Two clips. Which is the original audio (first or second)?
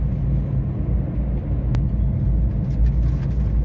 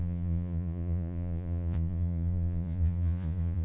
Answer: first